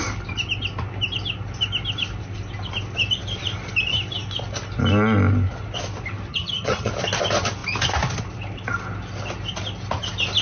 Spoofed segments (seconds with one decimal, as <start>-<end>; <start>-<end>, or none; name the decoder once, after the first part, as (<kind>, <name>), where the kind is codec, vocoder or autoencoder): 6.3-6.9 (vocoder, HiFi-GAN)